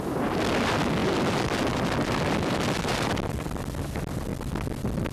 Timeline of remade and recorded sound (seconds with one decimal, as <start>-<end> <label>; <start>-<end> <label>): 0.0-1.0 recorded; 1.0-3.1 remade; 3.1-5.1 recorded